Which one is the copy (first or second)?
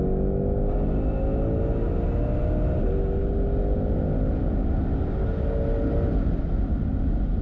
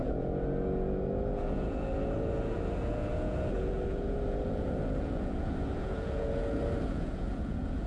second